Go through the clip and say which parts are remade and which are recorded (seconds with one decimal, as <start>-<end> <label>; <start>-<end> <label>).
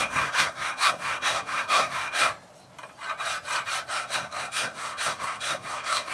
0.0-2.3 remade; 2.3-3.9 recorded; 3.9-6.1 remade